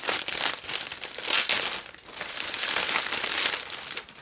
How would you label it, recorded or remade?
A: recorded